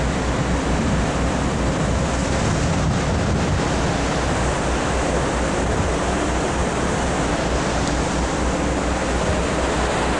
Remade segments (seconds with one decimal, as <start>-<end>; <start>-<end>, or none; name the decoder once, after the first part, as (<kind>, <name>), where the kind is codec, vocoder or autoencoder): 6.6-8.0 (vocoder, BigVGAN v2)